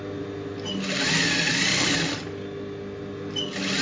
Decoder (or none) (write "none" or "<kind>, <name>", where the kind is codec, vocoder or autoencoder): none